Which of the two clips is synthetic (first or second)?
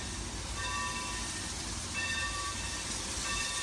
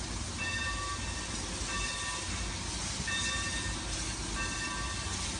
first